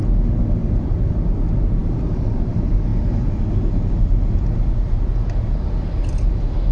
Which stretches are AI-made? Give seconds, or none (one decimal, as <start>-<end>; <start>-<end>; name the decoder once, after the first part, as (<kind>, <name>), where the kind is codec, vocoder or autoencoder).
0.6-1.1 (vocoder, BigVGAN v2); 1.8-2.5